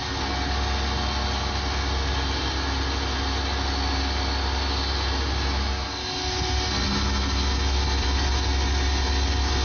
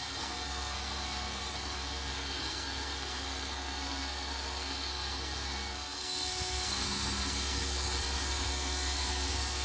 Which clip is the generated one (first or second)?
second